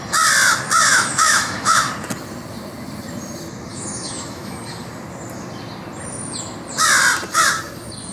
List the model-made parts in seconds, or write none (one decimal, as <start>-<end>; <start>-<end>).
0.9-1.9; 3.7-4.6